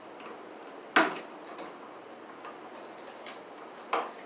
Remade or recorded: recorded